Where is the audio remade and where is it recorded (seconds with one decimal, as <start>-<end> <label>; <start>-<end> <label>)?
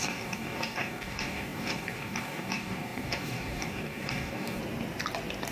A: 0.0-4.6 remade; 4.6-5.5 recorded